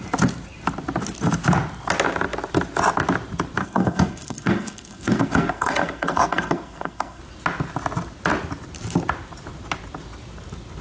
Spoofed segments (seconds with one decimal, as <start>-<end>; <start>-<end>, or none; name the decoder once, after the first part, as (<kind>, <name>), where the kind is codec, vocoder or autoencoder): 3.6-7.2 (codec, SNAC)